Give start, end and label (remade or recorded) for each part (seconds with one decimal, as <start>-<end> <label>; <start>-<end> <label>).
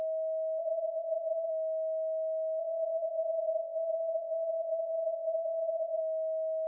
0.0-0.6 recorded; 0.6-1.5 remade; 1.5-2.6 recorded; 2.6-6.0 remade; 6.0-6.7 recorded